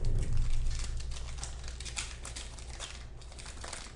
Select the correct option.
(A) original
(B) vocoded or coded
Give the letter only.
A